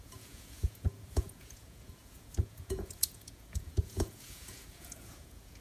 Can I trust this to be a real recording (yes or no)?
no